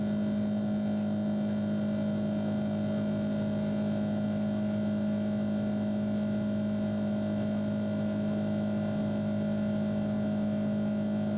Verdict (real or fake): real